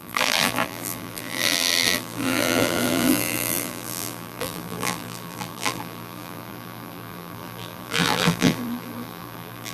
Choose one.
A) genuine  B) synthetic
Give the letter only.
B